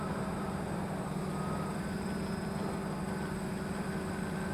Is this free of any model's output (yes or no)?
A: yes